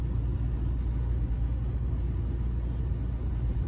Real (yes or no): yes